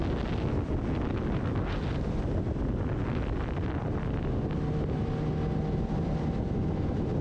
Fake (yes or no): no